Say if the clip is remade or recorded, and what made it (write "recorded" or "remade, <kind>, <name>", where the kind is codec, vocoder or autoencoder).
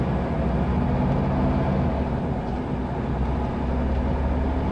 recorded